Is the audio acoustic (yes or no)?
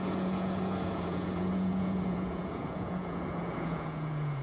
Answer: no